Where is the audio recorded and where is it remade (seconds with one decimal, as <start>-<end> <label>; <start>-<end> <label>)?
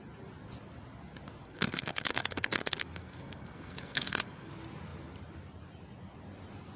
0.0-1.4 recorded; 1.4-4.5 remade; 4.5-6.8 recorded